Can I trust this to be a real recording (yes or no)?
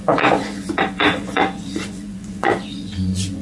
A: no